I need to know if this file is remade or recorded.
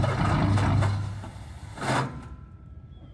recorded